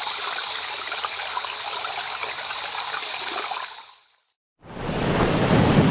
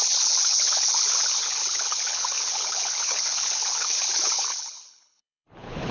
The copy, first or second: second